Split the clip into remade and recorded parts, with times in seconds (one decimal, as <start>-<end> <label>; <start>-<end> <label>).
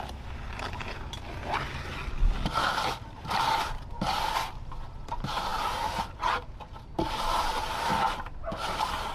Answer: 0.0-9.1 recorded